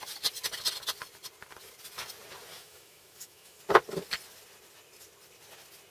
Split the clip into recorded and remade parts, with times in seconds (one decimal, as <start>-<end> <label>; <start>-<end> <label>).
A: 0.0-2.5 recorded; 2.5-3.6 remade; 3.6-5.9 recorded